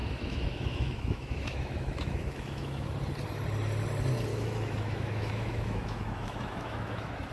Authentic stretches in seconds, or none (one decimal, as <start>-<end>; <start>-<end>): 2.9-4.3